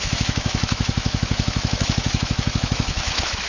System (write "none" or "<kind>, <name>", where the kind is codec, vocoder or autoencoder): autoencoder, DAC-VAE